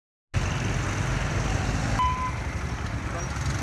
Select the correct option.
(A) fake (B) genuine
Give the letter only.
B